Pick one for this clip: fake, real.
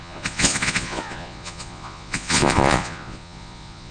fake